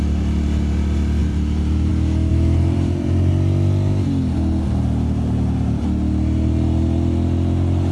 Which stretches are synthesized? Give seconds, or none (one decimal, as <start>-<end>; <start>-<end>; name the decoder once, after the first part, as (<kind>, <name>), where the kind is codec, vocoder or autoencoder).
1.2-1.9 (vocoder, BigVGAN v2); 2.3-3.3